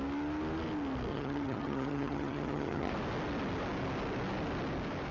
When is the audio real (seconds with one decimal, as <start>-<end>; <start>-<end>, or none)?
0.0-1.1; 2.9-5.1

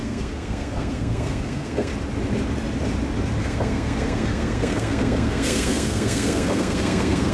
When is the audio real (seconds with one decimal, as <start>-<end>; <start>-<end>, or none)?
1.9-3.4

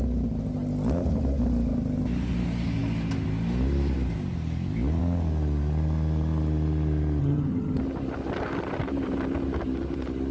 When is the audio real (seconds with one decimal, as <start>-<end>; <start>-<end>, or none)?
0.0-7.2; 7.8-10.3

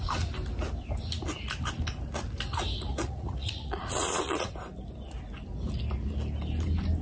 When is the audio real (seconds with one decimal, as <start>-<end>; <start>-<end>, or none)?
0.0-2.9; 4.5-7.0